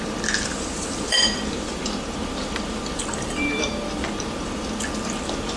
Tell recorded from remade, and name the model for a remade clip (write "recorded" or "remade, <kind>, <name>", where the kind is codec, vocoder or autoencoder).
remade, vocoder, BigVGAN v2